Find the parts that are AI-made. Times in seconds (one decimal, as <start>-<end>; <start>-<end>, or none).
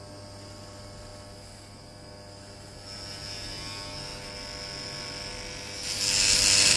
none